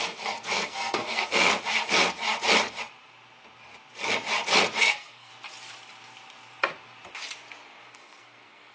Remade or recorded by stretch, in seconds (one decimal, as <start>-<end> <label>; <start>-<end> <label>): 0.0-1.5 remade; 1.5-4.8 recorded; 4.8-5.3 remade; 5.3-7.9 recorded; 7.9-8.7 remade